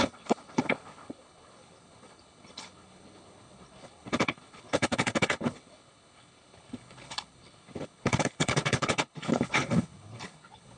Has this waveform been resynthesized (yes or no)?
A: yes